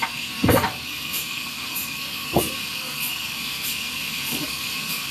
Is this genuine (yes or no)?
no